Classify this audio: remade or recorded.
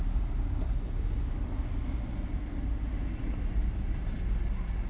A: recorded